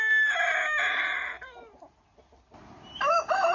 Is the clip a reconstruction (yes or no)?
no